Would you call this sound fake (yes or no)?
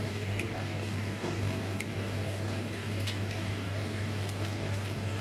yes